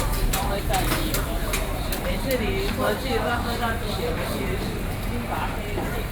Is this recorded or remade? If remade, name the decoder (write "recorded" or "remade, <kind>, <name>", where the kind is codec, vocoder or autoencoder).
remade, vocoder, BigVGAN v2